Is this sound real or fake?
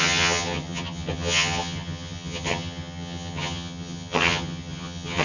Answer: fake